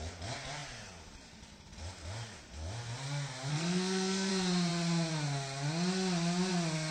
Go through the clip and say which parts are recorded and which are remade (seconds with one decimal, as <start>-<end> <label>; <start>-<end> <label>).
0.0-3.5 recorded; 3.5-4.3 remade; 4.3-6.9 recorded